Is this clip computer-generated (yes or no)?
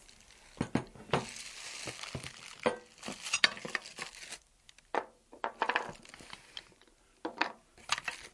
no